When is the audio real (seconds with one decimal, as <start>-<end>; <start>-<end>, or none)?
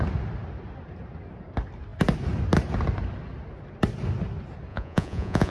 0.0-4.7